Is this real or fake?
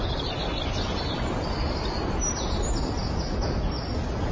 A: real